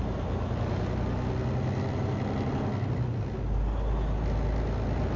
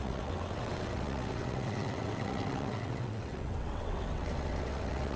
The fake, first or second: second